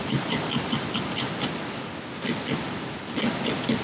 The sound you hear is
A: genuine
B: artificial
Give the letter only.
A